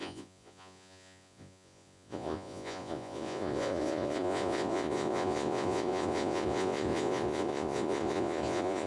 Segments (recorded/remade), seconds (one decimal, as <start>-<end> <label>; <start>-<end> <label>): 0.0-8.9 remade